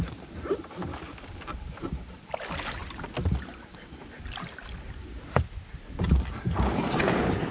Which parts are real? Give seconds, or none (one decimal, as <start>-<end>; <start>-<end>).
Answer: 0.0-7.5